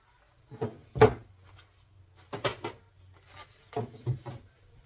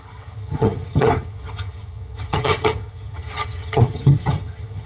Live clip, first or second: first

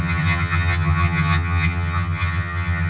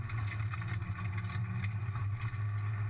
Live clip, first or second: second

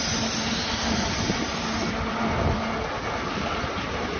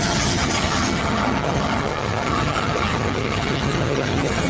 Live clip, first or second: first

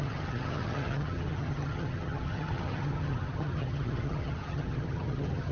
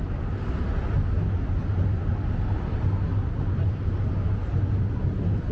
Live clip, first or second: second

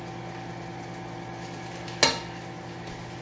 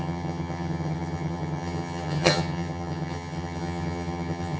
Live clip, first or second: first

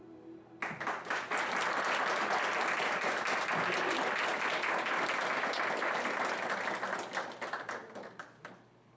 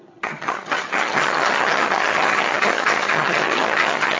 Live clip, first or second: first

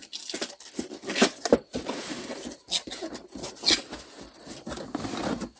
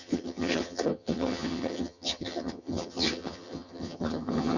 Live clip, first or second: first